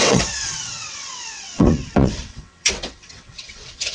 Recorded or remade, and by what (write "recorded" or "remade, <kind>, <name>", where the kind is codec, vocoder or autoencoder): remade, vocoder, WaveNeXt